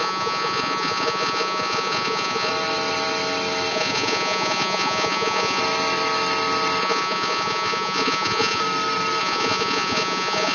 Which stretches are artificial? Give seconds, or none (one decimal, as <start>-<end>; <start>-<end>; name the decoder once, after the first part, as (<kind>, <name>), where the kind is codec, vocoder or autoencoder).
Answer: 0.0-2.5 (vocoder, Vocos); 3.7-5.6; 6.8-8.6; 9.2-10.5